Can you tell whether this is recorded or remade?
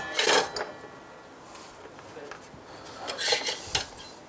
recorded